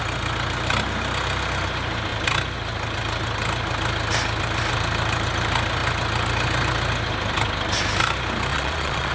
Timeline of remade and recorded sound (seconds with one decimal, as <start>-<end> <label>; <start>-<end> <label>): 0.0-8.5 recorded; 8.5-9.1 remade